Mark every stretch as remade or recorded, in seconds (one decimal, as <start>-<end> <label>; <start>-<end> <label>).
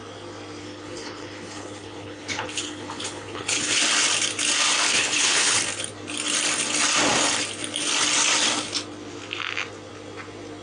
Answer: 0.0-0.6 recorded; 0.6-3.8 remade; 3.8-4.9 recorded; 4.9-5.6 remade; 5.6-10.6 recorded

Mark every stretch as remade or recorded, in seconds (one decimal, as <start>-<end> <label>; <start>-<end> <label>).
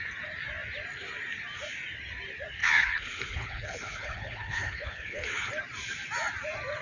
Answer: 0.0-2.6 recorded; 2.6-5.5 remade; 5.5-6.8 recorded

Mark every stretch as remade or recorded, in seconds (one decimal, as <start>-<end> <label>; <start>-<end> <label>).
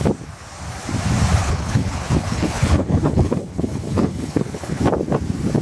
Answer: 0.0-1.4 recorded; 1.4-4.8 remade; 4.8-5.6 recorded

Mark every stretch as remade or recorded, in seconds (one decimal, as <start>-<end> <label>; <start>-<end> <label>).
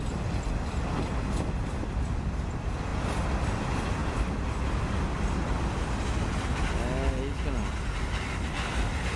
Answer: 0.0-9.2 recorded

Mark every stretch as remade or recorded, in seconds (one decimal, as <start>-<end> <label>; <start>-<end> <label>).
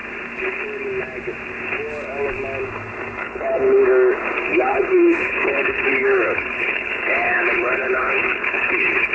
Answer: 0.0-3.2 recorded; 3.2-3.8 remade; 3.8-4.5 recorded; 4.5-9.1 remade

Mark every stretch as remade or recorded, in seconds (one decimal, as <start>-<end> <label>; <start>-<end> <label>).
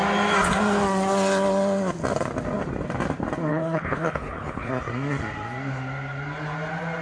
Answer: 0.0-3.5 recorded; 3.5-4.7 remade; 4.7-7.0 recorded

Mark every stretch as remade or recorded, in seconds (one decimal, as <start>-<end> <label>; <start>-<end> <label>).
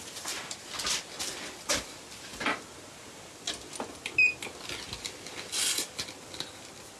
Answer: 0.0-7.0 recorded